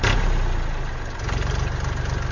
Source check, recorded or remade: recorded